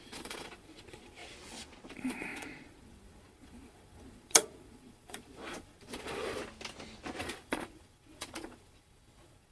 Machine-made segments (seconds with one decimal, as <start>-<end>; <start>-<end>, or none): 0.0-1.2; 1.9-6.4; 7.2-9.5